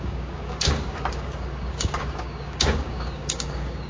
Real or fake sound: fake